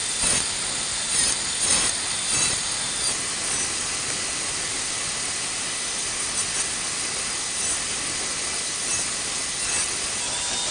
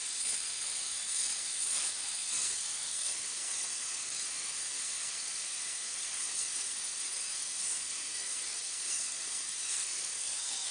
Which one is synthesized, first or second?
second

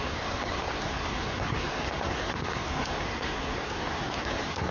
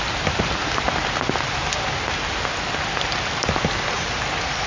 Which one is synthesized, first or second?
first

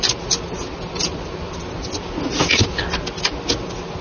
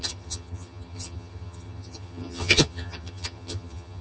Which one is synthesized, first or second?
second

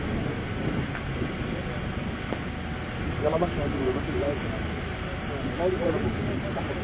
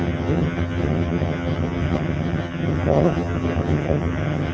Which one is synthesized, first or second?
second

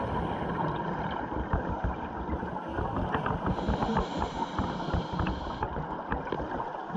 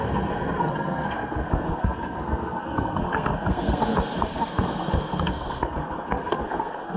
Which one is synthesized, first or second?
second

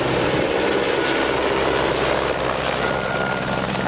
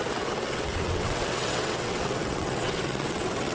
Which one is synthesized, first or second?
second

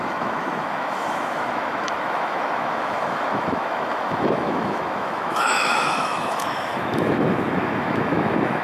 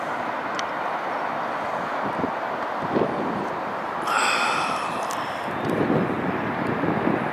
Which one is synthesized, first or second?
first